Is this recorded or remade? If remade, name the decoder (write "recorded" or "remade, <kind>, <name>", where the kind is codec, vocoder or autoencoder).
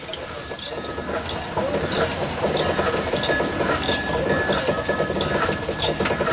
recorded